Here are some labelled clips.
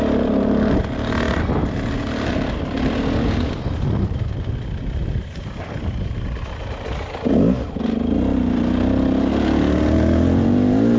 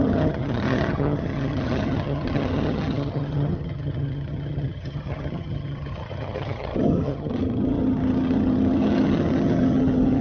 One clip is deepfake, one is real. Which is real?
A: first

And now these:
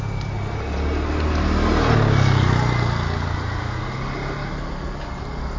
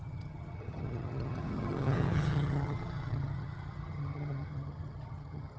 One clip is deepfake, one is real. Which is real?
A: first